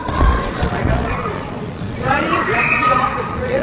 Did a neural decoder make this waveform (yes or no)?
yes